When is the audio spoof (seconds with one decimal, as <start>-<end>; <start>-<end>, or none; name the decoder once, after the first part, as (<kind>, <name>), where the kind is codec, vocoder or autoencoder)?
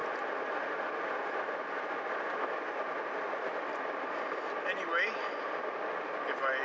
none